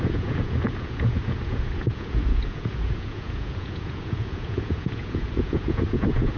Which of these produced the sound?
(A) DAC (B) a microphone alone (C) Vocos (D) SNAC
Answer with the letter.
C